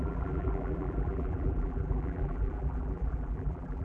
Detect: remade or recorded remade